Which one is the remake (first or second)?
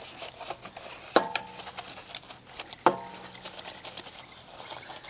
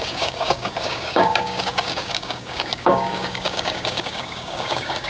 second